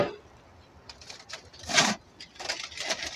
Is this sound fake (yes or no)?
no